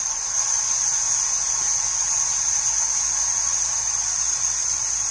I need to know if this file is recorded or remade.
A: recorded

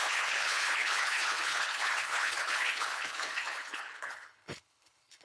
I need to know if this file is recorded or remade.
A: remade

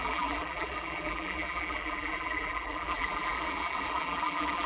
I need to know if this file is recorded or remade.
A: remade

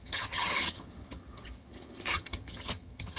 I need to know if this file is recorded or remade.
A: remade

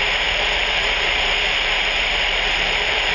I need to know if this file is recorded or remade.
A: remade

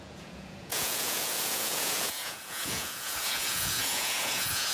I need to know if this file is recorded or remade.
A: remade